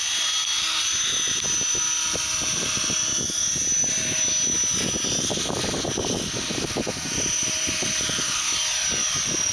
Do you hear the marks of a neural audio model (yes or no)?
no